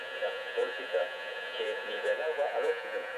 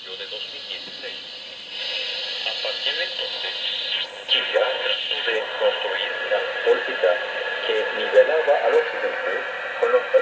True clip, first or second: second